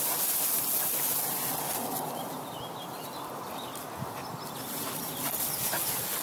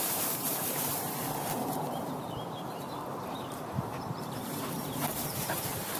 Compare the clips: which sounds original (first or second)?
first